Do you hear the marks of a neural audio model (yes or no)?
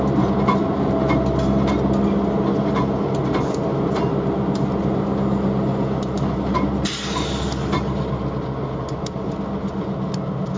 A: no